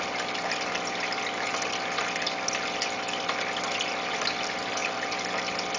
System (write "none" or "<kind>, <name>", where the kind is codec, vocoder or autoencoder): none